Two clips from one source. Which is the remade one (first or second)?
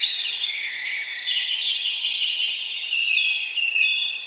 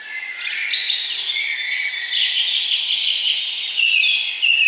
first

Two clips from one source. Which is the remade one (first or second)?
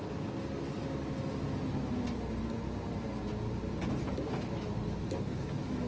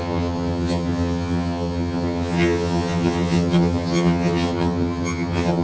second